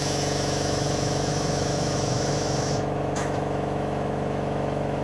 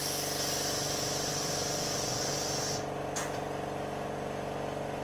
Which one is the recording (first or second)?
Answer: second